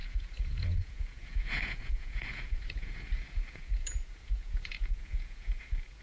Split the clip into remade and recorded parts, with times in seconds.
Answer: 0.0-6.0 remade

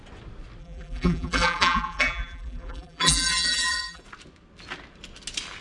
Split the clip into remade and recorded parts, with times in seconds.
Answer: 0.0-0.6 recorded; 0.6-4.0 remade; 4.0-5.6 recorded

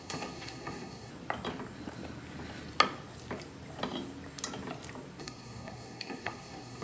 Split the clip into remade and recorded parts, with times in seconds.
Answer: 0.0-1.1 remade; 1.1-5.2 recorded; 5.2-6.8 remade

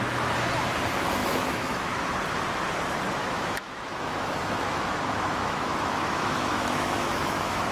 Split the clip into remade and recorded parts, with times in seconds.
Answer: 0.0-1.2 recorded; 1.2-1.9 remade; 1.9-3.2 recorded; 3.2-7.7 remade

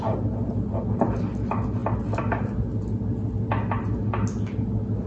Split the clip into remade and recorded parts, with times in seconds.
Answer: 0.0-5.1 recorded

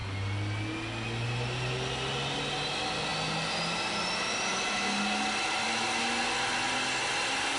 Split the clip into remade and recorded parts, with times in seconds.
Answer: 0.0-7.6 recorded